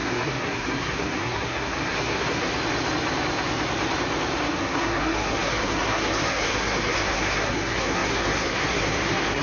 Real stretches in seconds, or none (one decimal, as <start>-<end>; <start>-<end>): 2.5-4.5